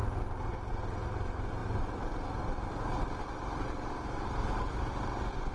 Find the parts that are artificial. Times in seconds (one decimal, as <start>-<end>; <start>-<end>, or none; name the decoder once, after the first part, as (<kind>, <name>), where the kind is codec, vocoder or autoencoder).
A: none